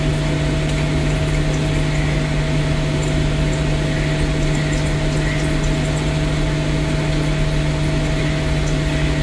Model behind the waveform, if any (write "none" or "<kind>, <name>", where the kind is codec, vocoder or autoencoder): none